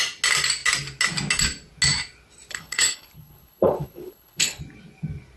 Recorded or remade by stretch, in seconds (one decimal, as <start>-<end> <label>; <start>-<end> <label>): 0.0-2.5 recorded; 2.5-4.6 remade; 4.6-5.4 recorded